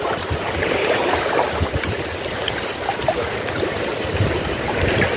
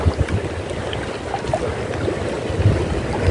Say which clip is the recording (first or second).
second